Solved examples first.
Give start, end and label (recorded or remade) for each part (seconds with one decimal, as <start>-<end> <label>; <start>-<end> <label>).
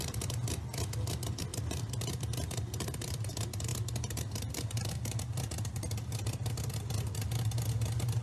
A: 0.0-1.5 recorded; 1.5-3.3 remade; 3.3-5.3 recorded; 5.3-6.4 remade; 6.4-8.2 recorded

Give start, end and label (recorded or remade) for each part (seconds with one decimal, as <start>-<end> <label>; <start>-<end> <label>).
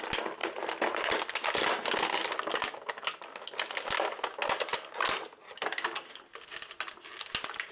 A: 0.0-0.4 recorded; 0.4-1.1 remade; 1.1-7.7 recorded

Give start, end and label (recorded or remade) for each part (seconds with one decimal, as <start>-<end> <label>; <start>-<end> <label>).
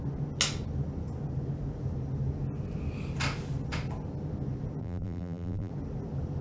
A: 0.0-4.8 recorded; 4.8-5.7 remade; 5.7-6.4 recorded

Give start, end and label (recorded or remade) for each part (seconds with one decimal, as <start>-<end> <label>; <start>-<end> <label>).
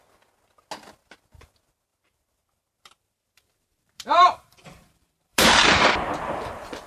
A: 0.0-1.9 recorded; 1.9-5.9 remade; 5.9-6.9 recorded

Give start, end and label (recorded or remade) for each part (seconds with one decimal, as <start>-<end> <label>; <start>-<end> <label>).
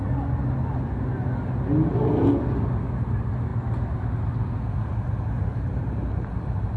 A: 0.0-6.8 recorded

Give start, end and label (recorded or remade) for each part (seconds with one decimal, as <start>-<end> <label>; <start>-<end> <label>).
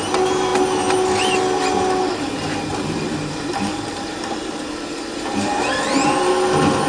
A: 0.0-2.7 recorded; 2.7-6.3 remade; 6.3-6.9 recorded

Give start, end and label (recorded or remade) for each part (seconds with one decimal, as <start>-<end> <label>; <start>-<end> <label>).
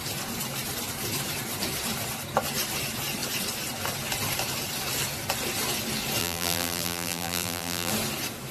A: 0.0-6.2 recorded; 6.2-7.9 remade; 7.9-8.5 recorded